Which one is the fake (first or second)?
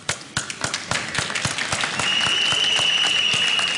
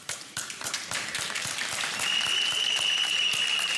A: second